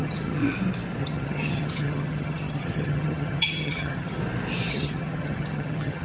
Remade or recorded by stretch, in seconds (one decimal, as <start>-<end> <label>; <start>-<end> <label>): 0.0-0.4 remade; 0.4-1.0 recorded; 1.0-4.2 remade; 4.2-4.7 recorded; 4.7-6.0 remade